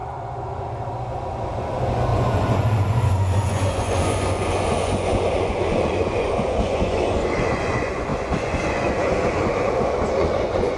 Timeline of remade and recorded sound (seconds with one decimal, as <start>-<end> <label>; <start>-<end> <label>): 0.0-10.8 remade